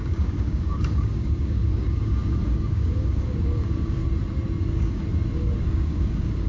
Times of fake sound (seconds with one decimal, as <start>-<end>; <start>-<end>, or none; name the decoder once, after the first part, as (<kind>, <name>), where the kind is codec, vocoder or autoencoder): 0.0-4.0 (codec, DAC); 4.6-5.0; 5.6-6.5